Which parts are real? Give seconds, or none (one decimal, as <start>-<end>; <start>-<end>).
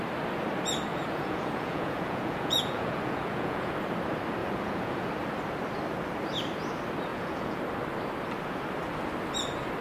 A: 0.0-0.9; 3.8-4.4; 5.1-7.1; 7.6-9.8